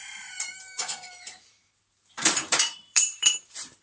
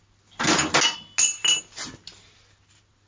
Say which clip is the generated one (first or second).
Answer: first